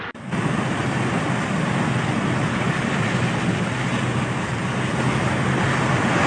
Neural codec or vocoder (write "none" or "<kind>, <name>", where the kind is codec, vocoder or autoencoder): none